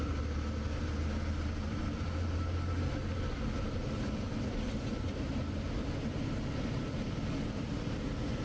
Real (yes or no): yes